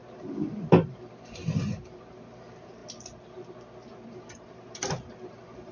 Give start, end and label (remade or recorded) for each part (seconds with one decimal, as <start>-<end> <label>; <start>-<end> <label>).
0.0-2.8 remade; 2.8-4.2 recorded; 4.2-5.7 remade